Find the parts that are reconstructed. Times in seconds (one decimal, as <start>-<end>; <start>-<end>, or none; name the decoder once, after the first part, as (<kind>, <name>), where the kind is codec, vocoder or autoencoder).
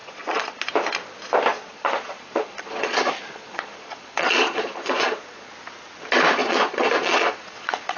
0.0-0.6 (vocoder, Vocos); 1.5-5.5; 6.4-8.0